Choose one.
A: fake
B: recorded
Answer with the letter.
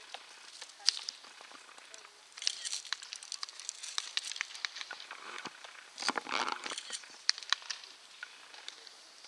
A